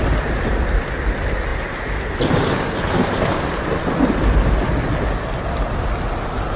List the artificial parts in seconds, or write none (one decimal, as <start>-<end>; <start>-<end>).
none

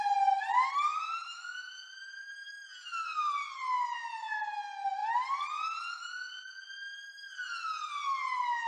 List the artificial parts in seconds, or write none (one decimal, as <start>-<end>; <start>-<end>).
0.5-2.5; 3.0-3.5

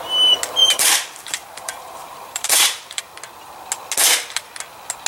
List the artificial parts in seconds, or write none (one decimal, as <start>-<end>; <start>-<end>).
0.6-3.0

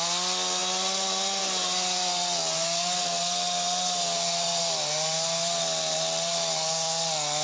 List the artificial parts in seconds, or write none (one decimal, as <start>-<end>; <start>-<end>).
none